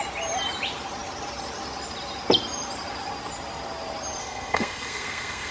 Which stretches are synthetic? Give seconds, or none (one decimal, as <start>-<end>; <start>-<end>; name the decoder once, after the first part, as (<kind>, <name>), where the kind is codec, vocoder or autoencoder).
4.2-5.5 (codec, SNAC)